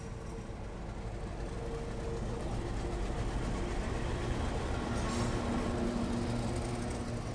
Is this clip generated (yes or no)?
no